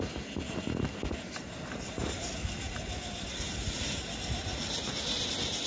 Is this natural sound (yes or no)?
yes